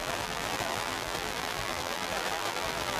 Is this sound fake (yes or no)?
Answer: yes